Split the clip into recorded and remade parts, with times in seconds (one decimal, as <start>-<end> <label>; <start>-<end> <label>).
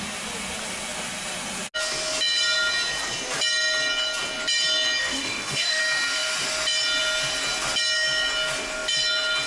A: 0.0-5.0 recorded; 5.0-5.8 remade; 5.8-9.5 recorded